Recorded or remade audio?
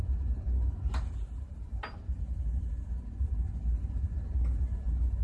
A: recorded